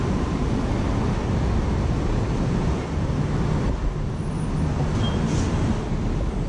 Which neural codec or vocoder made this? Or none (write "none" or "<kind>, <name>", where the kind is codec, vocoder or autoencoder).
none